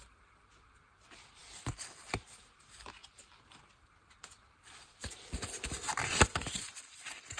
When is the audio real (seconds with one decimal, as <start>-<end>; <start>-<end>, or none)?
0.0-7.4